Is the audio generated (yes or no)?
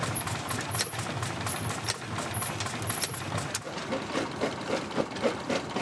no